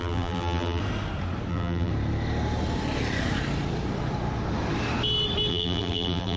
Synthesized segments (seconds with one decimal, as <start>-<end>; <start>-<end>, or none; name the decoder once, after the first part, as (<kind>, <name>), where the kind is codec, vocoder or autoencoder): 0.0-0.8 (vocoder, BigVGAN v2); 1.5-1.9; 5.5-6.4